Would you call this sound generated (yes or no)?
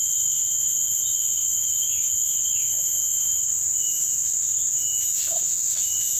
yes